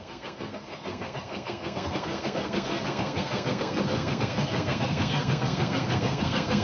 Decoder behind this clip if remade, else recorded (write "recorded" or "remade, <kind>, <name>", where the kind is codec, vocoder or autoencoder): remade, codec, SNAC